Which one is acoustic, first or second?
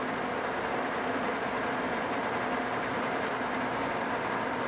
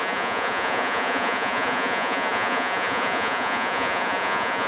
first